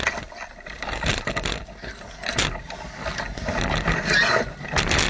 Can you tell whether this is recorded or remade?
recorded